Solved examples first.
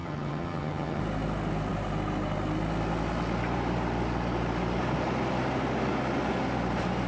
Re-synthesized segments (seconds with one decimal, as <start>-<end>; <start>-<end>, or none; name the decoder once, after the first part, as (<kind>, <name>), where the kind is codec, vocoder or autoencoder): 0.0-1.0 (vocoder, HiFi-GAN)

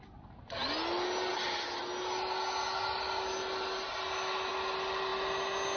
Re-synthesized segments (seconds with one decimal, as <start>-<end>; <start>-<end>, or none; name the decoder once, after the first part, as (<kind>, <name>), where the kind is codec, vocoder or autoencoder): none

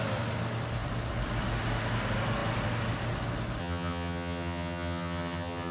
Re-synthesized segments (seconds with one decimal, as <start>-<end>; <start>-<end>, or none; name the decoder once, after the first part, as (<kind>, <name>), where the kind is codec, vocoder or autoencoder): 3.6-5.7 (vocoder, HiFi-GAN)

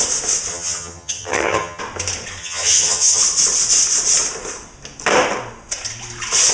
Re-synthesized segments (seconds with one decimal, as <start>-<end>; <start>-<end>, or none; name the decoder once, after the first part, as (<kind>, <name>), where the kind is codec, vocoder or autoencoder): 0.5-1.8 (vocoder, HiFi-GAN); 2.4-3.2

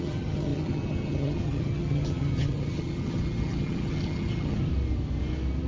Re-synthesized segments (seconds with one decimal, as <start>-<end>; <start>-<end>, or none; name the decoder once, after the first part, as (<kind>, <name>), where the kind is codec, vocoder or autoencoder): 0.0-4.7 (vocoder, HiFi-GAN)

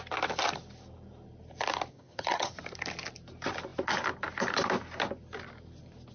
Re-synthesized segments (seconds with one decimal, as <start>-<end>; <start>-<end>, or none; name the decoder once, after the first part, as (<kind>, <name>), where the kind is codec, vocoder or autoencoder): 1.9-2.6 (vocoder, HiFi-GAN)

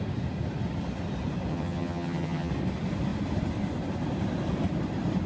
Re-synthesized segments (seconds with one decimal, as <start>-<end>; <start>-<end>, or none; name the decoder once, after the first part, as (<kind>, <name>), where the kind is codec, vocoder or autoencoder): 1.5-2.5 (vocoder, HiFi-GAN)

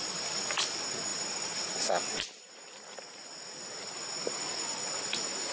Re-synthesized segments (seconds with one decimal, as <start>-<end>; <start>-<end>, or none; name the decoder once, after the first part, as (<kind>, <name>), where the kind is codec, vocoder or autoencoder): none